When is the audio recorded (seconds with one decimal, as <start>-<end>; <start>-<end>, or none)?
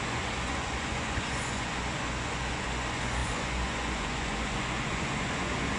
none